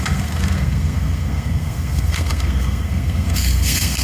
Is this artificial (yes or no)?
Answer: yes